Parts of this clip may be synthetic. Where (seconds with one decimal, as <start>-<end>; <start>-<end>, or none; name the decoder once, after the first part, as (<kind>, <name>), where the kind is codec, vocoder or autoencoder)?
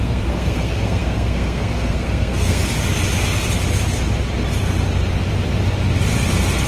0.0-2.6 (codec, SNAC)